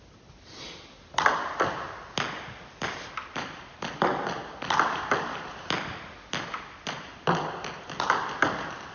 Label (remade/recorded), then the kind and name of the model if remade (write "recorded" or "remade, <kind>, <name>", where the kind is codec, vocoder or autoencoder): recorded